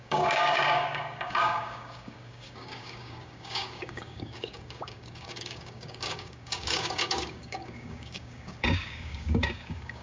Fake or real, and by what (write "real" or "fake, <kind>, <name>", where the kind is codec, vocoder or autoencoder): fake, codec, DAC